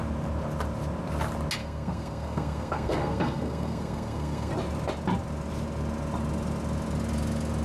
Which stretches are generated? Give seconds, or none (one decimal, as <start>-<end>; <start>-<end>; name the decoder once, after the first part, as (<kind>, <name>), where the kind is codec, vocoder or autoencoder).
1.6-4.5 (codec, SNAC)